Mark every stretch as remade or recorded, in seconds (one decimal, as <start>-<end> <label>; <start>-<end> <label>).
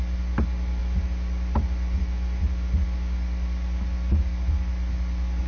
0.0-5.5 recorded